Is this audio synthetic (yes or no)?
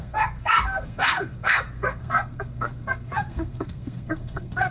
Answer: yes